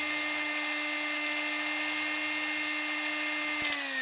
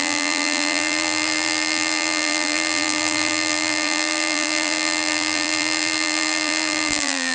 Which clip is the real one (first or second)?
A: first